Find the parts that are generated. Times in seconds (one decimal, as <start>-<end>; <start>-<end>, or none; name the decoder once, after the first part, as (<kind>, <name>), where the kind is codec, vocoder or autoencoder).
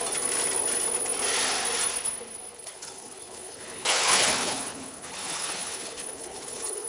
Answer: 2.5-6.9 (codec, HILCodec)